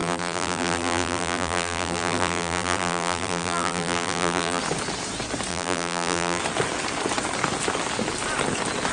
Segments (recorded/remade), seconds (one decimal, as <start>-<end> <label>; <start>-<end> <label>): 0.0-4.6 remade; 4.6-5.5 recorded; 5.5-6.4 remade; 6.4-8.9 recorded